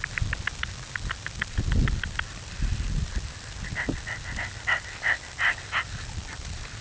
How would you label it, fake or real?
real